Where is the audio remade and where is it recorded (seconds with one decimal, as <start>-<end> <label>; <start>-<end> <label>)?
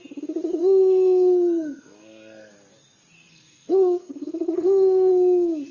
0.0-0.6 recorded; 0.6-2.5 remade; 2.5-3.3 recorded; 3.3-5.1 remade; 5.1-5.7 recorded